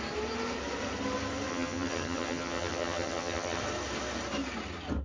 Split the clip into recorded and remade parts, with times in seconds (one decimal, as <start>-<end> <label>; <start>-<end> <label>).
0.0-1.5 recorded; 1.5-3.6 remade; 3.6-5.0 recorded